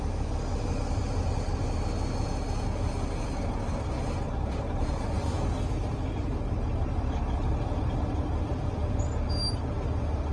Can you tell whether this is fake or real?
real